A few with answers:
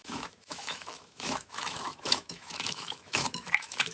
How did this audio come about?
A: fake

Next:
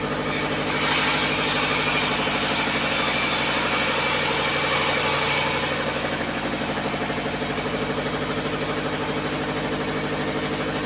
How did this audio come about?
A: real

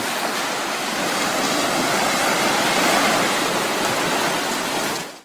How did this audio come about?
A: real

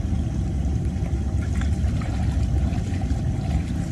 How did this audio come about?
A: real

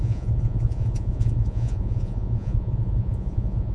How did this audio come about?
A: fake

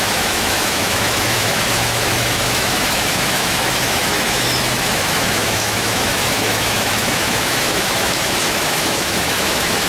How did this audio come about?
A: fake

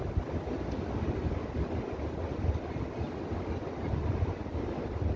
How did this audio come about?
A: real